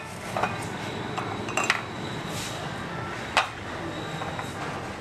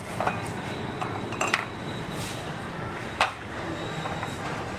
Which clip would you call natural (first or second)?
first